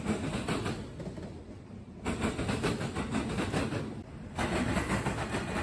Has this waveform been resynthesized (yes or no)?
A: no